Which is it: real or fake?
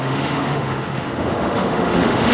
fake